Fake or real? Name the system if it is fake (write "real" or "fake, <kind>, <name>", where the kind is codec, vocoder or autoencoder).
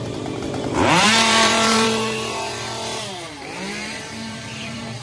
fake, vocoder, BigVGAN v2